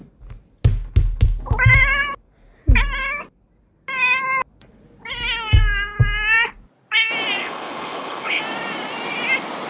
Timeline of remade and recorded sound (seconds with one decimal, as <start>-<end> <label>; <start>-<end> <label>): 0.0-7.4 recorded; 7.4-8.4 remade; 8.4-9.7 recorded